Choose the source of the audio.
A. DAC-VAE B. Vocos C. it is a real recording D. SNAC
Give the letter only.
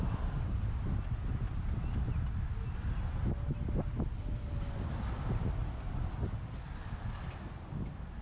C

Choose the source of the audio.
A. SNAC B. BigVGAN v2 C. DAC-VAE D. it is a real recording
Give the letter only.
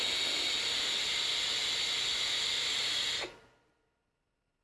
D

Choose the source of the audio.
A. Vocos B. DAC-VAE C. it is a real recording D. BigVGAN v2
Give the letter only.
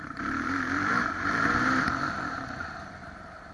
D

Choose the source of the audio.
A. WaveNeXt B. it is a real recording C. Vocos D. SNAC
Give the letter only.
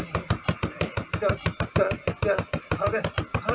B